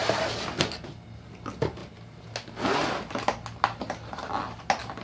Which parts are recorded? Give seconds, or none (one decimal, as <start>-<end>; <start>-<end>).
0.0-5.0